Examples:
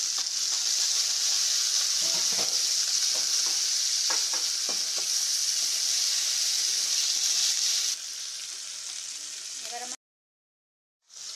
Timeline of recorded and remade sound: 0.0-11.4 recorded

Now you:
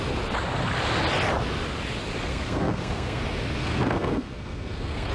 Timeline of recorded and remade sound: 0.0-2.3 recorded; 2.3-3.2 remade; 3.2-3.6 recorded; 3.6-5.1 remade

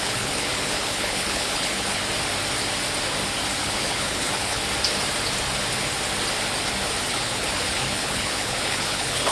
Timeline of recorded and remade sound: 0.0-2.0 remade; 2.0-3.6 recorded; 3.6-4.6 remade; 4.6-7.1 recorded; 7.1-9.3 remade

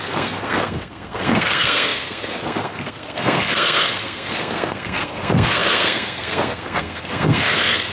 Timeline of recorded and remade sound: 0.0-7.9 remade

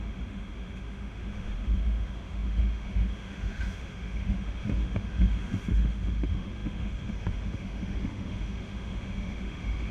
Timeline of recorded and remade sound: 0.0-9.9 remade

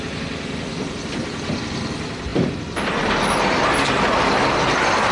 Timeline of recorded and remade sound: 0.0-5.1 recorded